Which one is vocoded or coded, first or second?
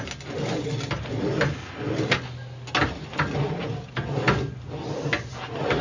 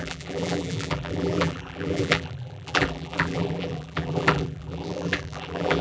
second